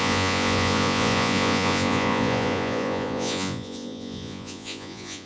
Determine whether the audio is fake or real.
fake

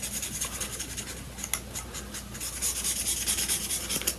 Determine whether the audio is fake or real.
real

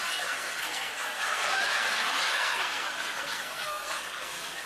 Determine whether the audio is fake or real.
fake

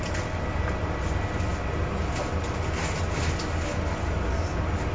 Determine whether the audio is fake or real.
real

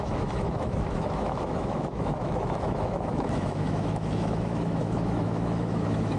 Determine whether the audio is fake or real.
fake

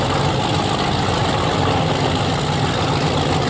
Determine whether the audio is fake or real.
real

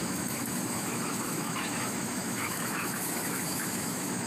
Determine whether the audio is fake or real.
fake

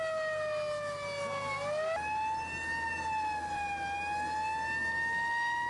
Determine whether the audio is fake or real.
real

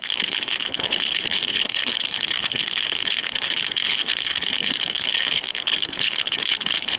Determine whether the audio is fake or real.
fake